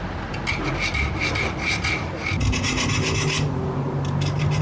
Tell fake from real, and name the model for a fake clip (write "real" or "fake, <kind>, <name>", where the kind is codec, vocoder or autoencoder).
real